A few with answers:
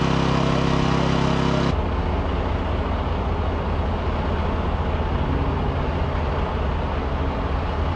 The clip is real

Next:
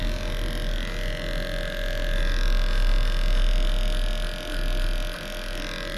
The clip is real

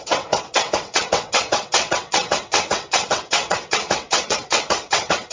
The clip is fake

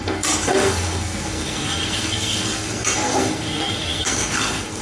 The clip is fake